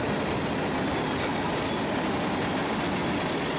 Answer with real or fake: real